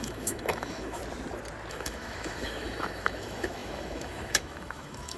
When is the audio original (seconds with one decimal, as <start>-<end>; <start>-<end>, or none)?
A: 1.0-1.7